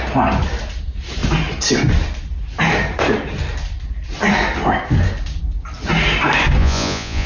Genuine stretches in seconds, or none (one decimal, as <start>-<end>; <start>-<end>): 0.0-6.6